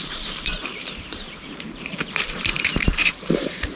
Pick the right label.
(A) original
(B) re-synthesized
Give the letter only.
B